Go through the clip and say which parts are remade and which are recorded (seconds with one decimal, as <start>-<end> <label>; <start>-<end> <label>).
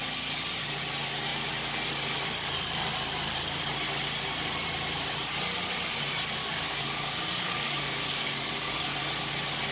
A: 0.0-6.4 recorded; 6.4-9.0 remade; 9.0-9.7 recorded